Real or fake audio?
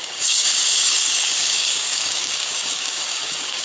fake